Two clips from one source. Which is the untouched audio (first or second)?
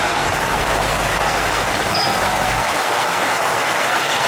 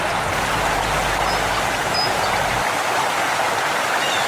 second